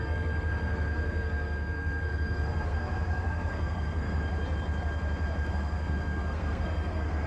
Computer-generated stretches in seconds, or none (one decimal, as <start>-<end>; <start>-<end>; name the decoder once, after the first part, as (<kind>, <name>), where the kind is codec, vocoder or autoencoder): 0.0-4.2 (codec, SNAC); 5.5-7.3